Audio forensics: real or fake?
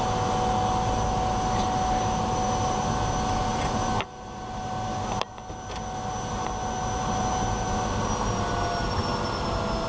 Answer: real